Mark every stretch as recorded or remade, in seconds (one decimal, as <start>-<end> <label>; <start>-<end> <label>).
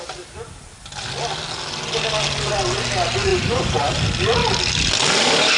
0.0-3.3 recorded; 3.3-3.9 remade; 3.9-4.4 recorded; 4.4-4.9 remade; 4.9-5.6 recorded